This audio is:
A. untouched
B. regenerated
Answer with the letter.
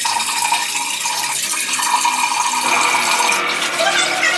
A